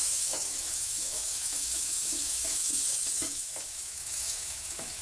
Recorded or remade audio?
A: remade